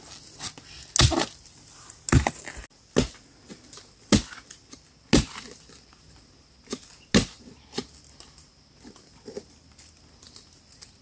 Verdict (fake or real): real